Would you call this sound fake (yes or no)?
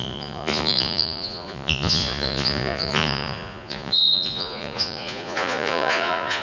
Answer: yes